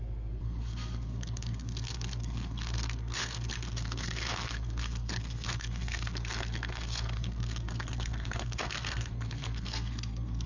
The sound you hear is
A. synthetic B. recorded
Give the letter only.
A